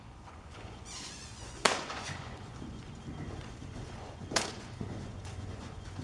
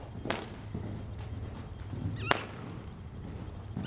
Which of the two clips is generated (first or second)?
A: first